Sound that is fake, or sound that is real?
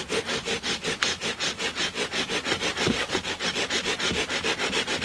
real